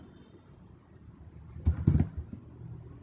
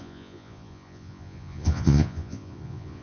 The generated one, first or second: second